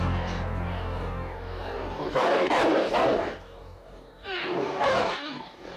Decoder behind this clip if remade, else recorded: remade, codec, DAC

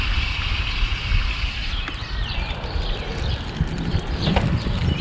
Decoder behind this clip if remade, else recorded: remade, vocoder, BigVGAN v2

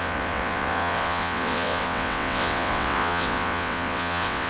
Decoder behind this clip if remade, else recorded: remade, vocoder, WaveNeXt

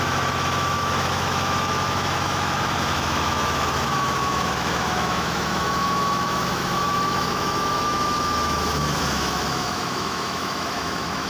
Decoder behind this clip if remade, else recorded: remade, autoencoder, DAC-VAE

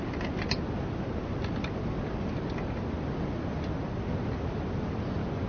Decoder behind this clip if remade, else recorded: recorded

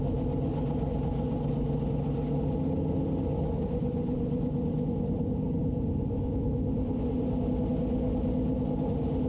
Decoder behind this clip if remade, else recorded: recorded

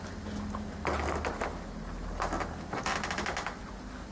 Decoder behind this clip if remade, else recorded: recorded